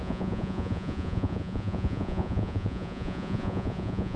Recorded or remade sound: remade